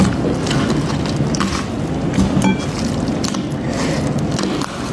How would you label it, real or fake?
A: real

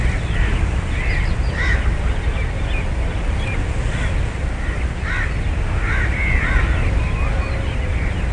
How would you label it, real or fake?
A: real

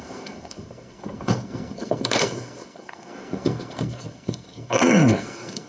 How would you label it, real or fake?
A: fake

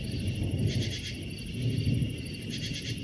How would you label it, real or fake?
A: real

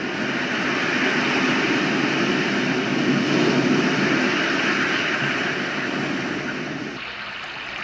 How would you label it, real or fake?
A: real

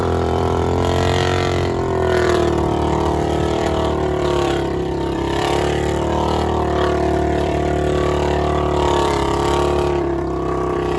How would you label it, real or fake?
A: fake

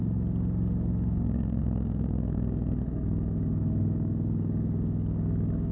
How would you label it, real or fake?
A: fake